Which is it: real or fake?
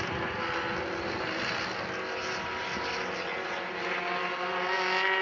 real